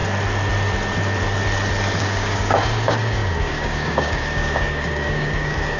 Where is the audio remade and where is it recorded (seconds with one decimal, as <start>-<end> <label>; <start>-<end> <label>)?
0.0-2.0 recorded; 2.0-5.8 remade